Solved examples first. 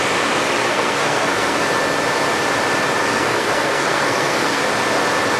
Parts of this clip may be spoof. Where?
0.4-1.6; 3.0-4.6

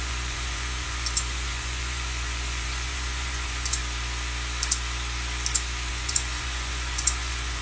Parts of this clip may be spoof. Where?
0.0-3.8; 5.9-7.6

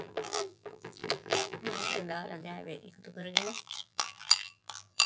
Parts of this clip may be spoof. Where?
0.0-5.1

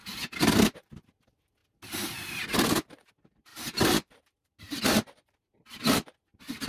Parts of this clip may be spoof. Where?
3.5-4.6

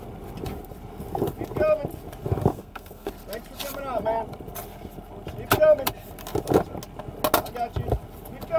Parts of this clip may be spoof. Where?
2.5-3.1

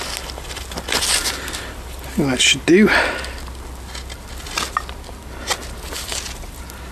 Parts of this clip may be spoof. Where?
none